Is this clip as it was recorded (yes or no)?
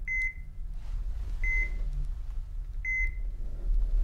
yes